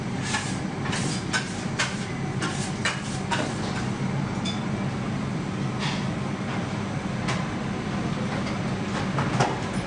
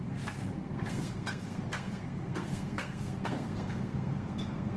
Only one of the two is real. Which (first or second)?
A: first